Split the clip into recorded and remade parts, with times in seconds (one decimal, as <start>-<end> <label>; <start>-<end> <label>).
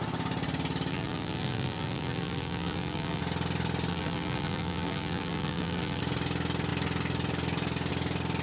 0.0-0.9 recorded; 0.9-3.2 remade; 3.2-3.9 recorded; 3.9-6.0 remade; 6.0-8.4 recorded